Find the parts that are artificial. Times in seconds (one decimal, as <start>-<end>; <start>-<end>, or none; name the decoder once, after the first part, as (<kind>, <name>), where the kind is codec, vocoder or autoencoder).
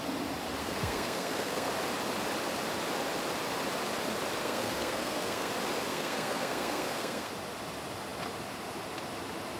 0.6-1.7 (codec, SNAC); 4.4-5.5; 5.9-7.3